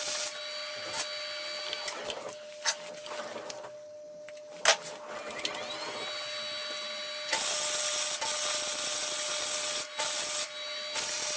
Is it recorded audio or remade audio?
recorded